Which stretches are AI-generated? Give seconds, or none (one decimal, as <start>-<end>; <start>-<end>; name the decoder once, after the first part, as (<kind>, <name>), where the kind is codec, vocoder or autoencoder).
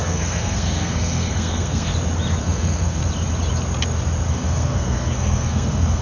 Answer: 0.0-1.9 (codec, SNAC); 2.4-3.0; 4.3-6.0